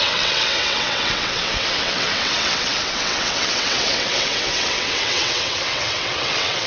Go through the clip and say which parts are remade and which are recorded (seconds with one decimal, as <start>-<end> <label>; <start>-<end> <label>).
0.0-6.7 remade